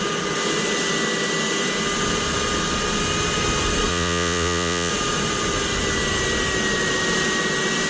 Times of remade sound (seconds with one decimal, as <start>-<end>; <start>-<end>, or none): 3.9-4.9